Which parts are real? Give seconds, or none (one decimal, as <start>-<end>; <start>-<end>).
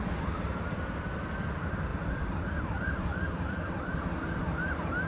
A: none